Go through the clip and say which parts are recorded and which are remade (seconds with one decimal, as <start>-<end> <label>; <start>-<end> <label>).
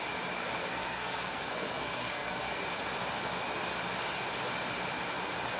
0.0-0.6 recorded; 0.6-2.6 remade; 2.6-5.6 recorded